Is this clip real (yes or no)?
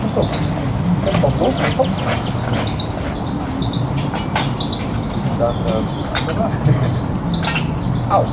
yes